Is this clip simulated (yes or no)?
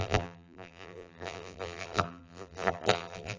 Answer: yes